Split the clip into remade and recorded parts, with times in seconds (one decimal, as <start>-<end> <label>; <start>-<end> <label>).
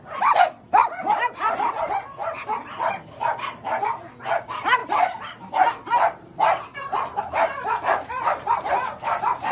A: 0.0-2.2 recorded; 2.2-3.0 remade; 3.0-4.8 recorded; 4.8-5.5 remade; 5.5-6.7 recorded; 6.7-8.7 remade; 8.7-9.5 recorded